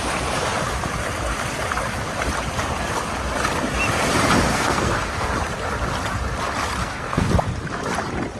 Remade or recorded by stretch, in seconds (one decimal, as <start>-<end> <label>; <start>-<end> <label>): 0.0-4.5 recorded; 4.5-5.3 remade; 5.3-6.8 recorded; 6.8-7.3 remade; 7.3-8.4 recorded